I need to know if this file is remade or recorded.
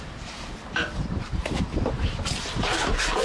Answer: remade